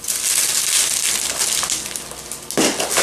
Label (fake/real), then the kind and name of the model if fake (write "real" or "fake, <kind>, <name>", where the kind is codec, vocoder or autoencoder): real